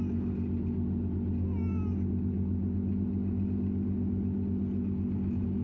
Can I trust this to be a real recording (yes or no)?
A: yes